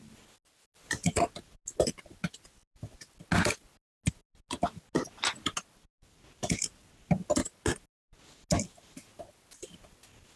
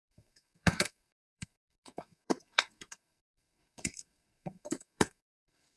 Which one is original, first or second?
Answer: first